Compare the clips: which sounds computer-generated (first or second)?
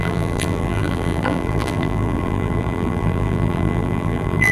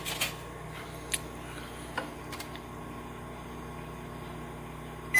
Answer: first